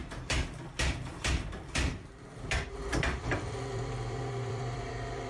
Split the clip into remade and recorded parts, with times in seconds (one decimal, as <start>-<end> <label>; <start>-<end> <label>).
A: 0.0-3.2 recorded; 3.2-5.3 remade